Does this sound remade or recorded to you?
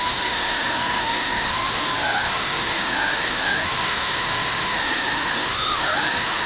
remade